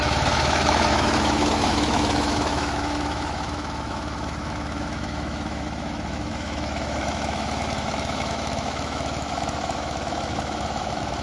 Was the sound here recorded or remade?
remade